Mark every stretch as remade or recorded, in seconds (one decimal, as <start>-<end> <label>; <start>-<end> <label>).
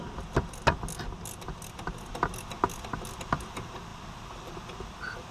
0.0-3.9 recorded; 3.9-5.3 remade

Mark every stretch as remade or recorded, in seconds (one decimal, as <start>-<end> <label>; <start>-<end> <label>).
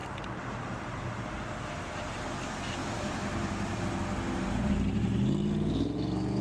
0.0-1.7 remade; 1.7-2.8 recorded; 2.8-3.9 remade; 3.9-6.4 recorded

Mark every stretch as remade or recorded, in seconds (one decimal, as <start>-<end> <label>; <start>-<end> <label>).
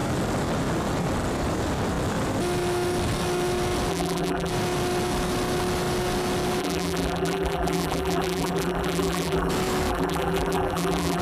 0.0-3.9 recorded; 3.9-4.5 remade; 4.5-6.6 recorded; 6.6-9.5 remade; 9.5-9.9 recorded; 9.9-11.2 remade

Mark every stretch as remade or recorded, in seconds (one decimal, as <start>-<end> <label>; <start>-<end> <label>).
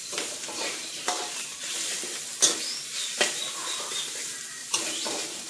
0.0-1.7 remade; 1.7-5.5 recorded